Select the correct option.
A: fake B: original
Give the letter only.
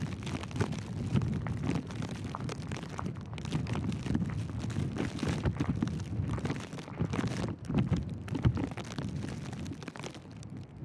B